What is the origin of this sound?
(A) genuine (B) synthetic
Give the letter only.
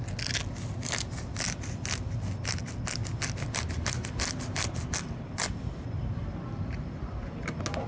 A